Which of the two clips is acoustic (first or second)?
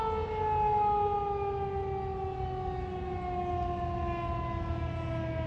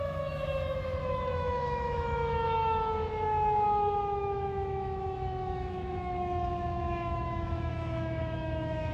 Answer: first